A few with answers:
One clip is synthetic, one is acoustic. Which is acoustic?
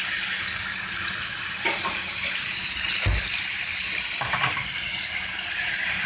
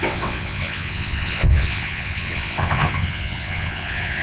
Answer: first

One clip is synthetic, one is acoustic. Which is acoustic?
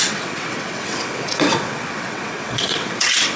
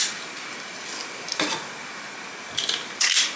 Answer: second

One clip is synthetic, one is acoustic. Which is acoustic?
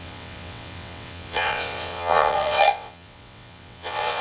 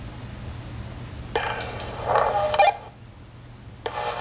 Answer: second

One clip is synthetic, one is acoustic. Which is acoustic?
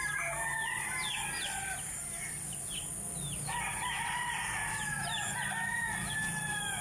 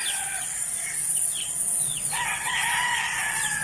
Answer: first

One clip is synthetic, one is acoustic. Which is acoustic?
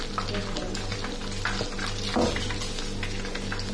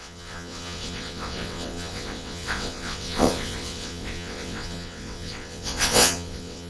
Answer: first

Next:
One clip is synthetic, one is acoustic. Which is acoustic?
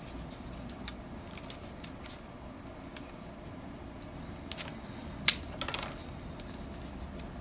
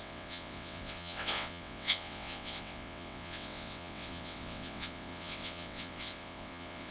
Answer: first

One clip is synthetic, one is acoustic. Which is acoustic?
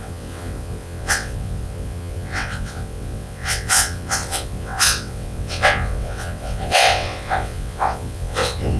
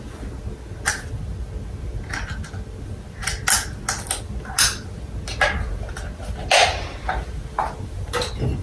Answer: second